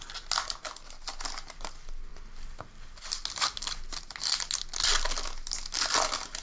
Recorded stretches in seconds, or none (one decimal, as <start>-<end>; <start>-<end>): 0.0-6.4